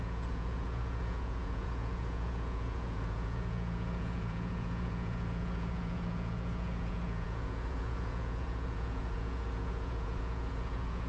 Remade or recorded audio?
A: remade